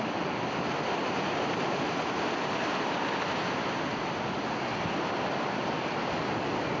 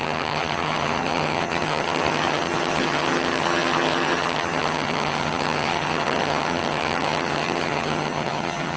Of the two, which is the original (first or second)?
first